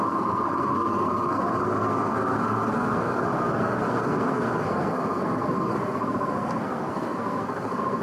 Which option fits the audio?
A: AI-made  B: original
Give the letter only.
A